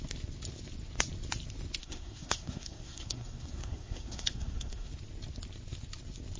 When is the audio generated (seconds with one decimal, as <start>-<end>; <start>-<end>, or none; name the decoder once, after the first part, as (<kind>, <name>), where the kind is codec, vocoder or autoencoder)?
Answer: 1.8-4.9 (codec, SNAC)